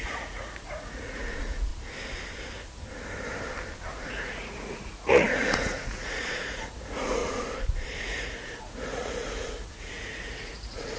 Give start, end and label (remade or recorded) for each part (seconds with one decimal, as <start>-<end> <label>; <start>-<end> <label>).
0.0-1.7 remade; 1.7-4.1 recorded; 4.1-7.2 remade; 7.2-8.0 recorded; 8.0-11.0 remade